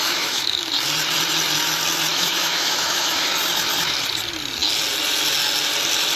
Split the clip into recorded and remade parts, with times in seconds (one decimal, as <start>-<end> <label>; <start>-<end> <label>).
0.0-0.7 remade; 0.7-2.1 recorded; 2.1-3.3 remade; 3.3-6.2 recorded